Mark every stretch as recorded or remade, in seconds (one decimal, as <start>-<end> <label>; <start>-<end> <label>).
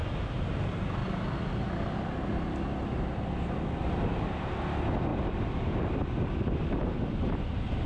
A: 0.0-0.5 remade; 0.5-5.1 recorded; 5.1-7.9 remade